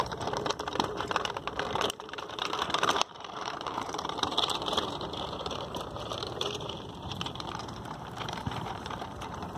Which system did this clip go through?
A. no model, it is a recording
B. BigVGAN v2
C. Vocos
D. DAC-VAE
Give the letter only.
B